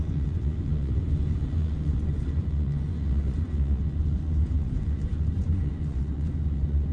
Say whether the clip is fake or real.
fake